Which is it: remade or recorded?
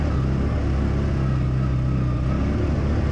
recorded